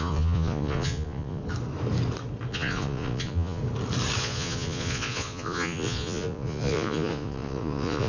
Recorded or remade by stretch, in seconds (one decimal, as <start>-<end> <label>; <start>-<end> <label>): 0.0-1.4 remade; 1.4-2.5 recorded; 2.5-3.6 remade; 3.6-4.2 recorded; 4.2-8.1 remade